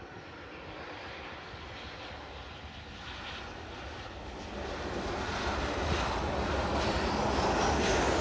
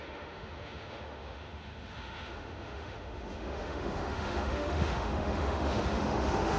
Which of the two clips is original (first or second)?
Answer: first